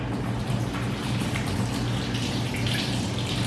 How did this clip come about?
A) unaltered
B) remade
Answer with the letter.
A